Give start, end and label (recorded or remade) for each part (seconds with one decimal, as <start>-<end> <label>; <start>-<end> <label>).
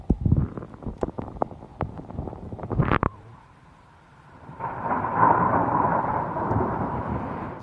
0.0-1.7 recorded; 1.7-4.6 remade; 4.6-5.1 recorded; 5.1-6.8 remade; 6.8-7.6 recorded